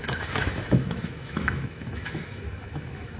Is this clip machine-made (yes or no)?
yes